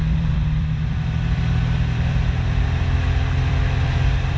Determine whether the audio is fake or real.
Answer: fake